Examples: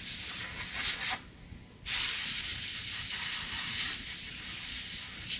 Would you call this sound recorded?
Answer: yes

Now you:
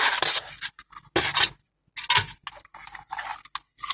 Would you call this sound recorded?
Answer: yes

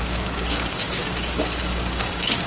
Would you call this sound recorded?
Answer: no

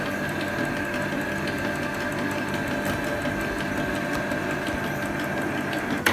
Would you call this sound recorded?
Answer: yes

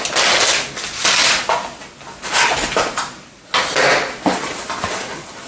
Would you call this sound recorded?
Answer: yes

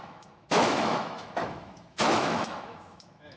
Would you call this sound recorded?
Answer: no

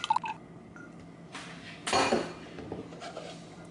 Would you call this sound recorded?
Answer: yes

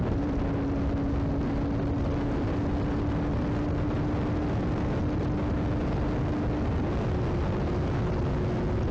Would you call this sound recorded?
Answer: yes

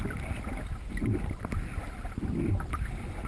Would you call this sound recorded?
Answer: yes